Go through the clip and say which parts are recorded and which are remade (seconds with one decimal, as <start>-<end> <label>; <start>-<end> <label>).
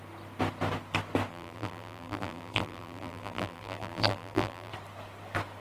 0.0-1.3 recorded; 1.3-4.7 remade; 4.7-5.6 recorded